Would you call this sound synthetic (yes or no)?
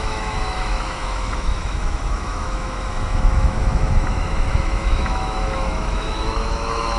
yes